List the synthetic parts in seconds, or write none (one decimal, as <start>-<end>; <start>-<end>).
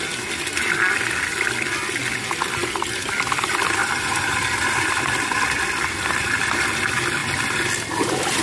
3.8-4.8